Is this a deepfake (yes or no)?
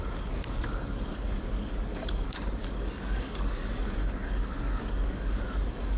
yes